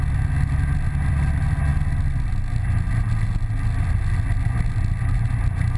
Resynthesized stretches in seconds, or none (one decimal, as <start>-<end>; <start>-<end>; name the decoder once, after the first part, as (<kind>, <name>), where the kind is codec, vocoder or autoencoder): none